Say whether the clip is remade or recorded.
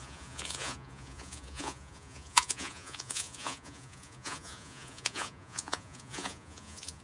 remade